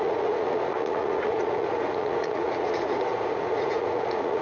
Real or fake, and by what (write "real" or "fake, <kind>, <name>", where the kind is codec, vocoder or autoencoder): fake, vocoder, Vocos